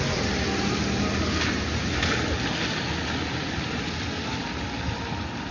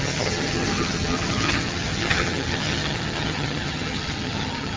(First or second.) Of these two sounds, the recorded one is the first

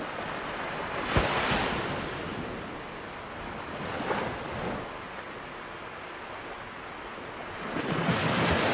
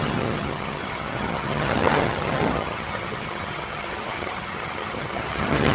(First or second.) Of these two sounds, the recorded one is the first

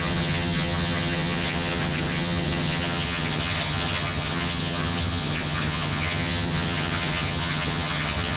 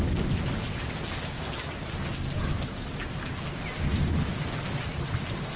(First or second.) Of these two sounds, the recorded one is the second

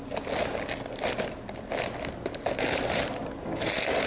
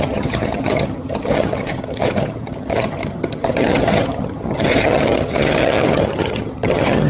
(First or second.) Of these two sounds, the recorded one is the first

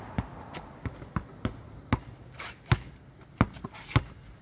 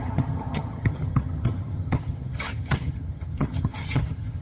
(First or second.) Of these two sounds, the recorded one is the first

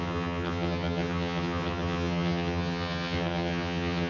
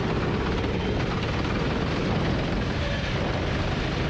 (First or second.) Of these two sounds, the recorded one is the second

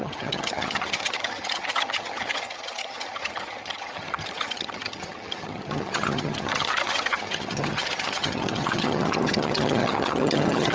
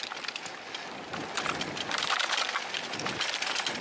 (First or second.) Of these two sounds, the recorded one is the second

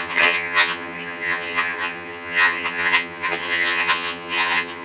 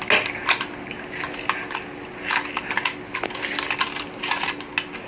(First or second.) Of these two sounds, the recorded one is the second